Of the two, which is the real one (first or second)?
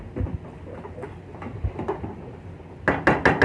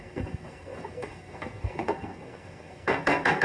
first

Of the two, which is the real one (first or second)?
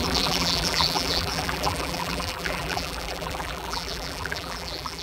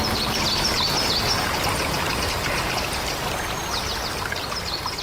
second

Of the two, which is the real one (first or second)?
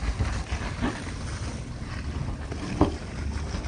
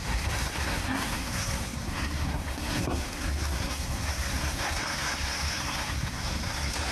first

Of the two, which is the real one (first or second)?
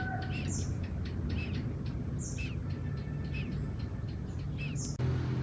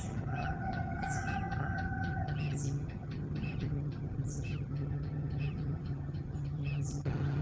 first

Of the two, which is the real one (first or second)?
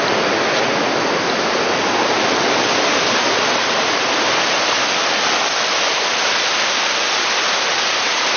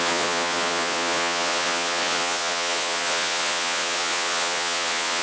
first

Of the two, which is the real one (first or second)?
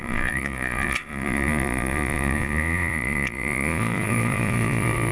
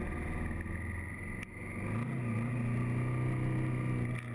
second